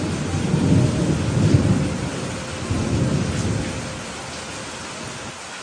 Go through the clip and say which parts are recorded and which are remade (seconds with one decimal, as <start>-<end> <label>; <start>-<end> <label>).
0.0-5.6 recorded